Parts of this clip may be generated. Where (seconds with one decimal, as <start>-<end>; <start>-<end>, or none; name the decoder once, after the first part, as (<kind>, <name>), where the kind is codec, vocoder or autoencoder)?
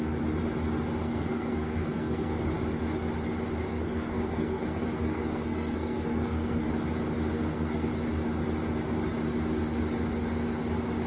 1.0-2.5 (codec, SNAC); 3.7-6.7; 7.3-7.9